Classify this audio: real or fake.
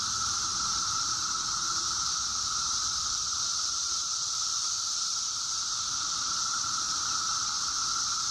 fake